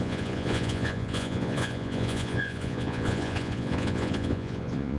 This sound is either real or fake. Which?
fake